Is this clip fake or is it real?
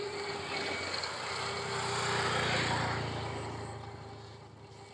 real